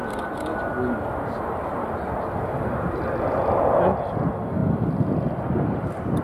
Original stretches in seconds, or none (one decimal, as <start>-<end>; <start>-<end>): 0.0-6.2